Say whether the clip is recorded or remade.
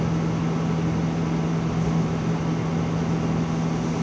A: recorded